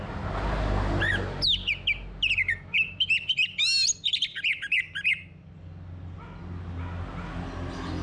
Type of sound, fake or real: real